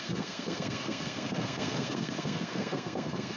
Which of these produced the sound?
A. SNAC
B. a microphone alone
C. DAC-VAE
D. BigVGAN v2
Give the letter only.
A